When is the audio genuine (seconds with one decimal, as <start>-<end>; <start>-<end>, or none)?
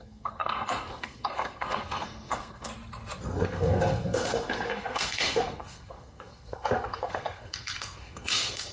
2.7-3.2